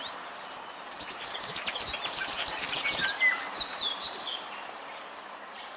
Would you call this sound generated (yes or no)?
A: yes